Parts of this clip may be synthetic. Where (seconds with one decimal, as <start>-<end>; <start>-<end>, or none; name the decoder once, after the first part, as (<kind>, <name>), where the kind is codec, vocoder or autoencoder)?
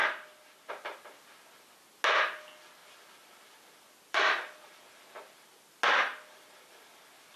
2.8-5.7 (vocoder, BigVGAN v2)